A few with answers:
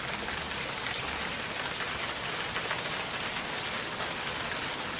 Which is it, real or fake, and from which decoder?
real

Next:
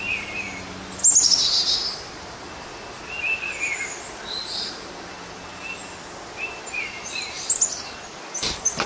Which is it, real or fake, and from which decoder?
real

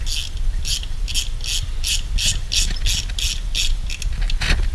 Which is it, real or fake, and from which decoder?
real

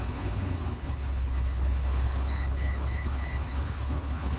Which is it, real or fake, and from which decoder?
fake, codec, HILCodec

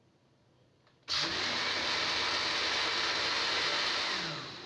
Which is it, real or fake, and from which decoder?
real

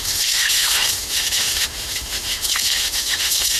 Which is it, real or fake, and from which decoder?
fake, autoencoder, DAC-VAE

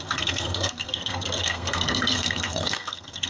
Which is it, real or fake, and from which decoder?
fake, codec, SNAC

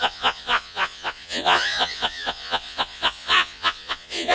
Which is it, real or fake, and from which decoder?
fake, vocoder, Vocos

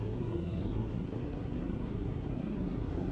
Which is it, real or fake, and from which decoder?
fake, codec, SNAC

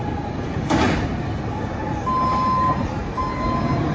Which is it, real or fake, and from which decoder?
real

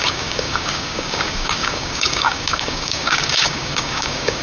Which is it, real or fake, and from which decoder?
fake, codec, DAC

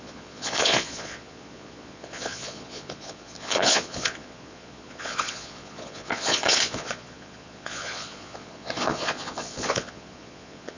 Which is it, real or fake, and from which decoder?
fake, vocoder, Vocos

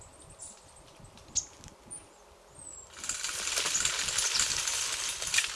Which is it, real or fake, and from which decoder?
real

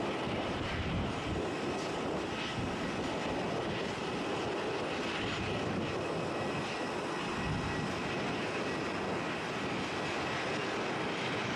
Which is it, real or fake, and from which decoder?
real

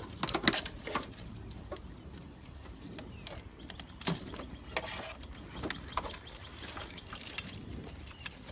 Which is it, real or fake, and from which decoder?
real